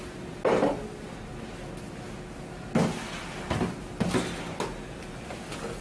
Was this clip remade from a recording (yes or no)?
no